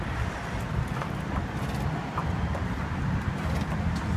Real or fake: real